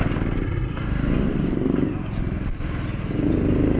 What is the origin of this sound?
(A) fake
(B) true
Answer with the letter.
B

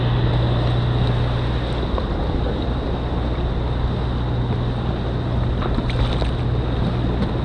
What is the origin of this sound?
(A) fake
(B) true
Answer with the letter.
B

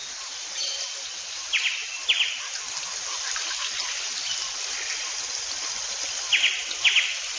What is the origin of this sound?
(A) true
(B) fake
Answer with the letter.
A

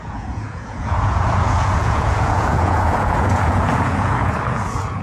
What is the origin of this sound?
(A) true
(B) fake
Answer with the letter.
B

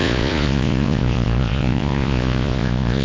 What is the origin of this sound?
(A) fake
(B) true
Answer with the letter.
A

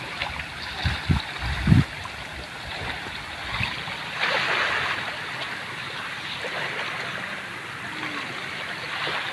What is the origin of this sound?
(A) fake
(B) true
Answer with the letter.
B